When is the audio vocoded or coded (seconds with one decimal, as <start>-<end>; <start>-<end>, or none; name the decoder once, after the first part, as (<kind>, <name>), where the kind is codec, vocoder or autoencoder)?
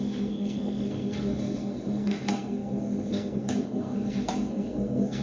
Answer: 0.0-5.2 (codec, SNAC)